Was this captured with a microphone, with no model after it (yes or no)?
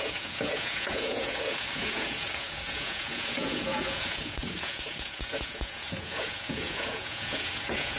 no